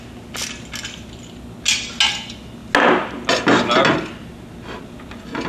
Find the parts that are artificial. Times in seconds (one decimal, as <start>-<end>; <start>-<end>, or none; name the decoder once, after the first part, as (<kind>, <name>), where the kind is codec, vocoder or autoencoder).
none